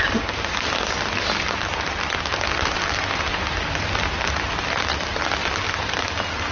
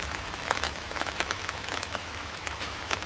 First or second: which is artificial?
second